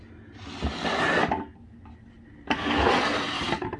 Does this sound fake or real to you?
real